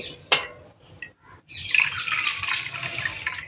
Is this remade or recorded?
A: recorded